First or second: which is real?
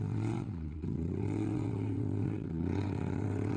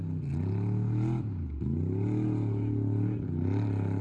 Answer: second